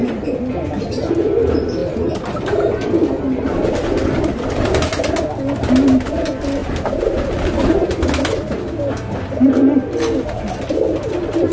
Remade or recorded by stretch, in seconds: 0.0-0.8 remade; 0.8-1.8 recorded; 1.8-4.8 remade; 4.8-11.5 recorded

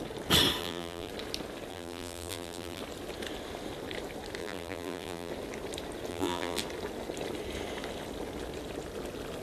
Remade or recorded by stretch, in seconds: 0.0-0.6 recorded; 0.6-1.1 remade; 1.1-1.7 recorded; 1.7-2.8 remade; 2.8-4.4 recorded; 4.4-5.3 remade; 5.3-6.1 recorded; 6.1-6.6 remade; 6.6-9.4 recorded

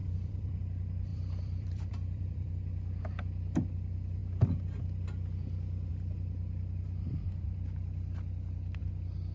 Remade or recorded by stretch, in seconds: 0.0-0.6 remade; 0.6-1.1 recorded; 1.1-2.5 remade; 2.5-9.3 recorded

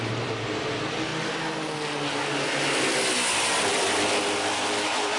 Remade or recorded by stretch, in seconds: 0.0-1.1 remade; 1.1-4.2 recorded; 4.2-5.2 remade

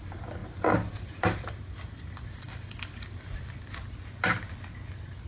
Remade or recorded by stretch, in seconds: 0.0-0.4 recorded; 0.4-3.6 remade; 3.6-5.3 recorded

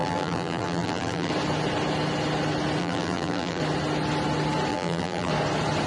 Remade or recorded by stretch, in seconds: 0.0-1.3 remade; 1.3-2.8 recorded; 2.8-3.6 remade; 3.6-4.7 recorded; 4.7-5.3 remade; 5.3-5.9 recorded

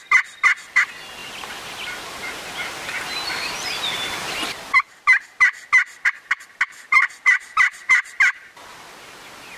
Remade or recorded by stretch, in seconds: 0.0-6.9 recorded; 6.9-8.0 remade; 8.0-9.6 recorded

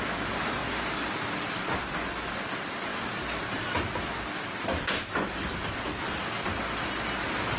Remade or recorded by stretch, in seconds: 0.0-0.6 recorded; 0.6-1.9 remade; 1.9-2.9 recorded; 2.9-6.5 remade; 6.5-7.6 recorded